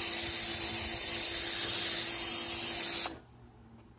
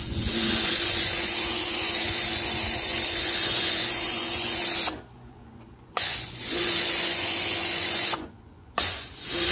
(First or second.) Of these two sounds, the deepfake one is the second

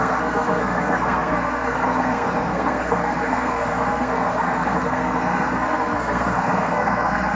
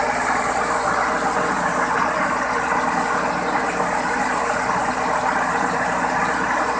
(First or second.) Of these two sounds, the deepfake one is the first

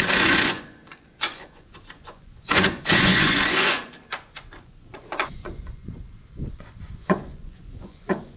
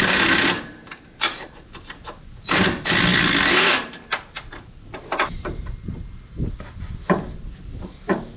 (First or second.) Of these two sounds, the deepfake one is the first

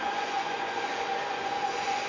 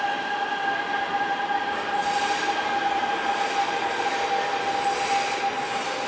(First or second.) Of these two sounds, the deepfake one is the first